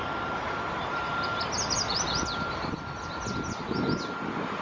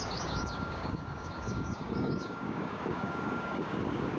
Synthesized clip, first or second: second